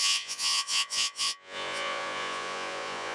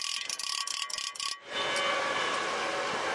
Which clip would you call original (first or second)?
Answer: second